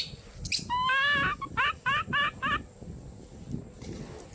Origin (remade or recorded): recorded